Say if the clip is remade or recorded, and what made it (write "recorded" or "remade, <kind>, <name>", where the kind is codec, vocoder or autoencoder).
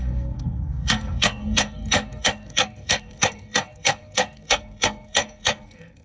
remade, codec, SNAC